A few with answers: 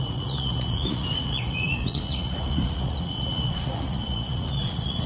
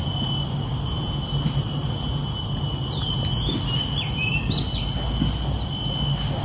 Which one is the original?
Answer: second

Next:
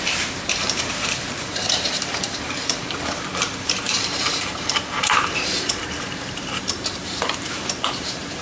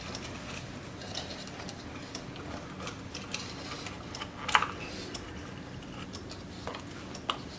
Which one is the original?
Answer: second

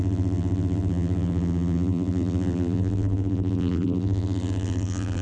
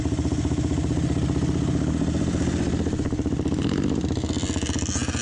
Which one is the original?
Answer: second